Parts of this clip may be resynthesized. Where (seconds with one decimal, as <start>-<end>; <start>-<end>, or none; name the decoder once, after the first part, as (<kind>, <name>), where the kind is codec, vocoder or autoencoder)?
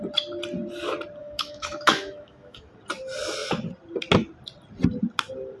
1.2-2.7 (autoencoder, DAC-VAE)